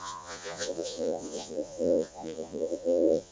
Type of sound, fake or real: fake